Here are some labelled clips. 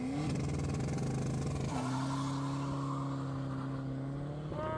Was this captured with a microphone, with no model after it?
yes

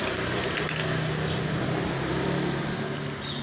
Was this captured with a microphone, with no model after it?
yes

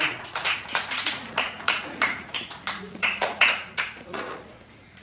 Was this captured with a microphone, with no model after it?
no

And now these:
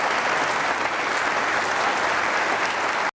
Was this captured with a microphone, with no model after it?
yes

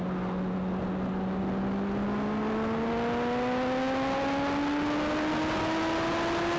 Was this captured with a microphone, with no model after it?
yes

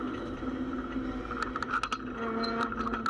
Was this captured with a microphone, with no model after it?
yes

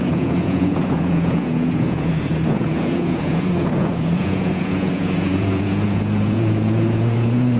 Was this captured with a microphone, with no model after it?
no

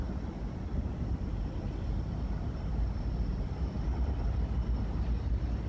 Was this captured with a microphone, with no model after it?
yes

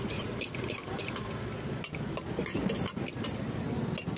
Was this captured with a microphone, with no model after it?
yes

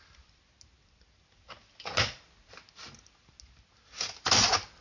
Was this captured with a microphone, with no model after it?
yes